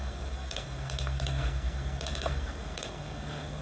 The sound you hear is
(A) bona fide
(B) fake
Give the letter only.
B